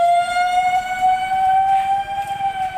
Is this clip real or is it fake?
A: fake